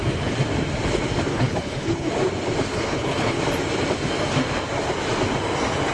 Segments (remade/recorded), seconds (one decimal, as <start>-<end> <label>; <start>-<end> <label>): 0.0-1.3 recorded; 1.3-2.1 remade; 2.1-2.7 recorded; 2.7-3.4 remade; 3.4-5.9 recorded